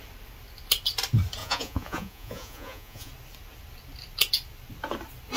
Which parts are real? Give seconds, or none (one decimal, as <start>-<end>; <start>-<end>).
0.0-1.4; 3.1-5.4